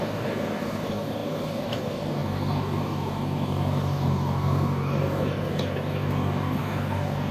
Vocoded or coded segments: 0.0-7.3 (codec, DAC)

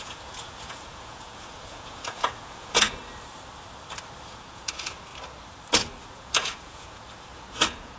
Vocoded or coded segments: 0.0-3.0 (vocoder, Vocos); 4.3-5.1; 6.1-8.0

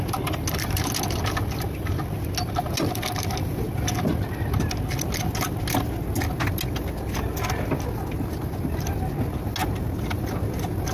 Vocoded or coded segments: none